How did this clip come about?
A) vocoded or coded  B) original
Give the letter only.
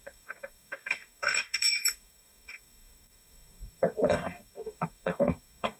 A